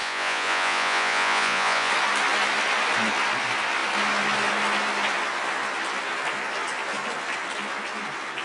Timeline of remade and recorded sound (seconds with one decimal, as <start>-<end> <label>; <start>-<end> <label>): 0.0-1.9 remade; 1.9-8.4 recorded